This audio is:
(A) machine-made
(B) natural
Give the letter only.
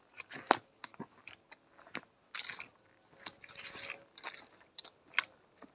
B